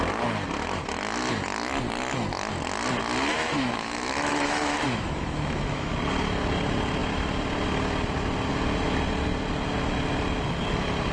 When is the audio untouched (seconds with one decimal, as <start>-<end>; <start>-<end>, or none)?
0.0-3.3; 5.9-11.1